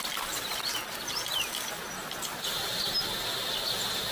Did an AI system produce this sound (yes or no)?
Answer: no